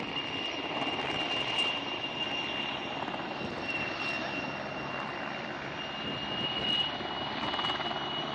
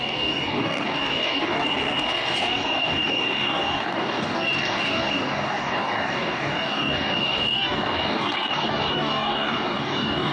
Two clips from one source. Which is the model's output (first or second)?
second